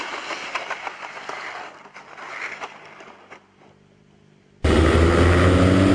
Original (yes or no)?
yes